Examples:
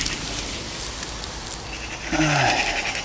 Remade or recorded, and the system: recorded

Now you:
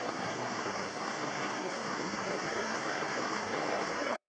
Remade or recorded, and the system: remade, codec, SNAC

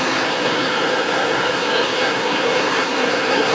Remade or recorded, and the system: remade, codec, SNAC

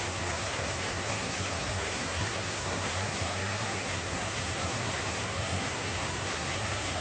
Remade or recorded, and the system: remade, codec, SNAC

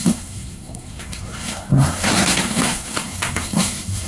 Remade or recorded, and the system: remade, codec, SNAC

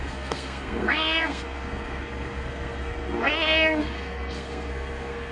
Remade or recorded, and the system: remade, codec, SNAC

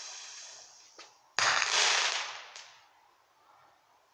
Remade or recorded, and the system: recorded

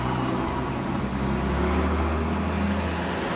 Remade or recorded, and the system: recorded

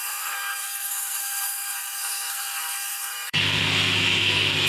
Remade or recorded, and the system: remade, codec, SNAC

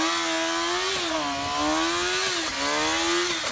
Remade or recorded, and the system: recorded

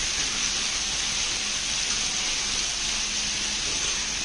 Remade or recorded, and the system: recorded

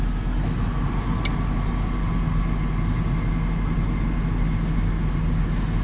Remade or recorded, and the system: recorded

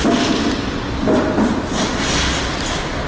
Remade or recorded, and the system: recorded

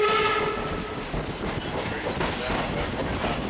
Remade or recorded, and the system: recorded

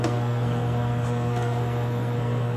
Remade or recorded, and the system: remade, codec, SNAC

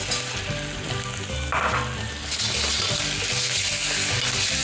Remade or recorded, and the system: recorded